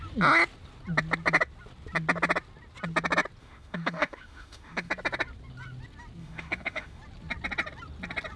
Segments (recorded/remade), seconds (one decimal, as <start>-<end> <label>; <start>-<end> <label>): 0.0-3.4 recorded; 3.4-4.9 remade; 4.9-6.2 recorded; 6.2-7.0 remade; 7.0-8.4 recorded